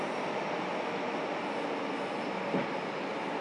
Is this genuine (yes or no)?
yes